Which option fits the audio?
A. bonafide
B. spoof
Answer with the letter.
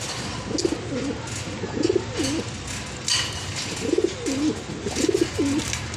A